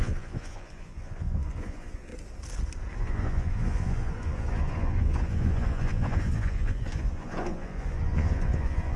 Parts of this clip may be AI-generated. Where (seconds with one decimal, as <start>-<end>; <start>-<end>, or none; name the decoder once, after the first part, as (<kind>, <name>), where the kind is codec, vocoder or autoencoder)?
0.0-2.1 (vocoder, Vocos); 3.0-9.0